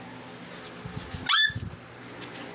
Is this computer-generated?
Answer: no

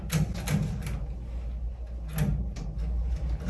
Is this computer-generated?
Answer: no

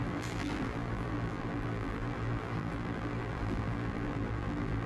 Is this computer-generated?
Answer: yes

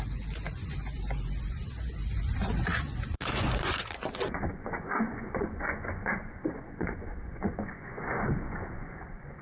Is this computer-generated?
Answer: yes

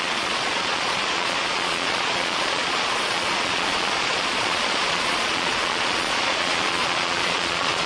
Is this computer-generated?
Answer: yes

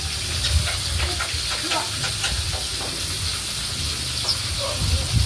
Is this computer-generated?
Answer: no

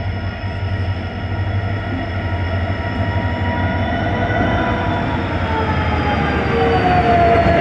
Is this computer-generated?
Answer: no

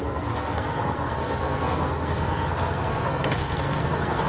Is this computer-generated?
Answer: yes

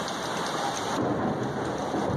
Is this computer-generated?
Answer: no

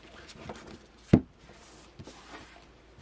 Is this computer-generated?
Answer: no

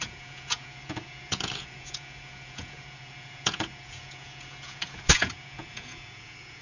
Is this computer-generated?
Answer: yes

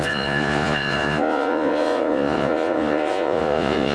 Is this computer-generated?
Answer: yes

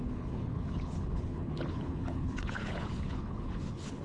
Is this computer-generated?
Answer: yes